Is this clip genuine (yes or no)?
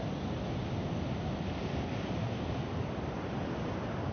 yes